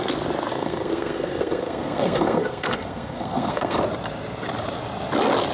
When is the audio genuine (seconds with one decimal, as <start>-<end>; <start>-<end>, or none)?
0.0-0.5; 3.8-5.5